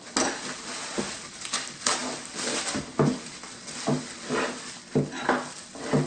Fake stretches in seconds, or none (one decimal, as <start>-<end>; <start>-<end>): none